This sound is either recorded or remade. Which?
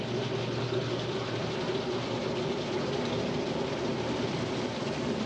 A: recorded